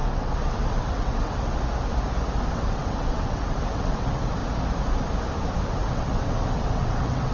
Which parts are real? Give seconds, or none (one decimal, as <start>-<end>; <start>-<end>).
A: 1.5-2.5; 4.4-5.9